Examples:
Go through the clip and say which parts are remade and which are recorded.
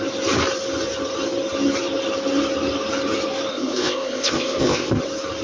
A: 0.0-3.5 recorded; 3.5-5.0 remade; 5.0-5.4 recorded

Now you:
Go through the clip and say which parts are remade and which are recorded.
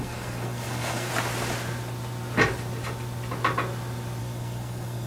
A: 0.0-1.1 remade; 1.1-4.2 recorded; 4.2-5.1 remade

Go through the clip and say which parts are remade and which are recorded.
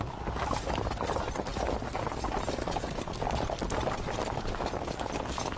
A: 0.0-5.6 recorded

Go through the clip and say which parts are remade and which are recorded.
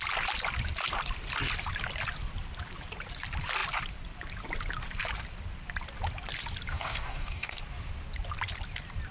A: 0.0-6.7 recorded; 6.7-7.6 remade; 7.6-9.1 recorded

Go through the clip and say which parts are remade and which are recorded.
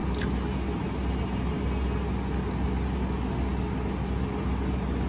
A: 0.0-5.1 recorded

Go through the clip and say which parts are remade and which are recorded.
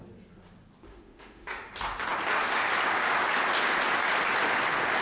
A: 0.0-0.9 recorded; 0.9-1.7 remade; 1.7-5.0 recorded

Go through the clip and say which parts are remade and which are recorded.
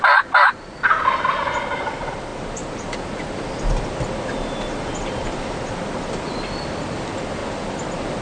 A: 0.0-8.2 recorded